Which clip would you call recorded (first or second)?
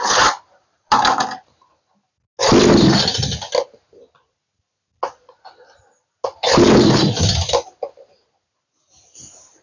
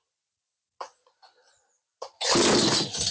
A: first